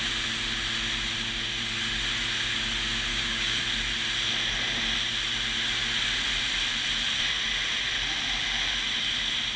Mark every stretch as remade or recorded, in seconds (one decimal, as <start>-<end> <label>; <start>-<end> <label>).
0.0-3.1 recorded; 3.1-3.6 remade; 3.6-9.6 recorded